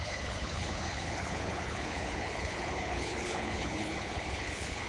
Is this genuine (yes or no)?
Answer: no